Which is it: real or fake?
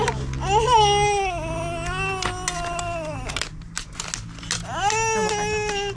real